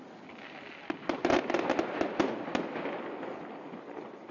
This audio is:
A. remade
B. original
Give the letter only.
B